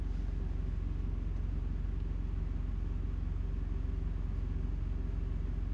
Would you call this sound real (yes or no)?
yes